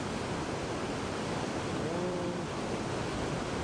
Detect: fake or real real